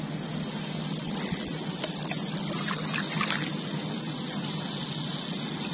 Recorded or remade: recorded